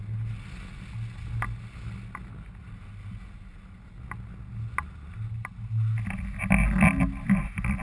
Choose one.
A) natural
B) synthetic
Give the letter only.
A